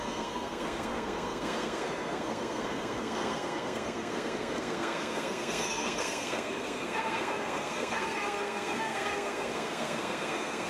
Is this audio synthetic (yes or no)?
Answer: yes